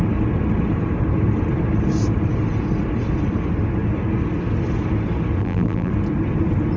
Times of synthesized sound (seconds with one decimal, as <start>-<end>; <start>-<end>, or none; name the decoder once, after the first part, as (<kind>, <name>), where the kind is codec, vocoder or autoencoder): 5.4-5.9 (vocoder, BigVGAN v2)